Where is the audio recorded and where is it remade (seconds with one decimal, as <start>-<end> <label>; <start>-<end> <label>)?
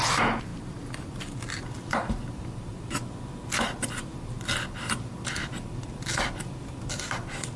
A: 0.0-2.7 remade; 2.7-3.5 recorded; 3.5-7.6 remade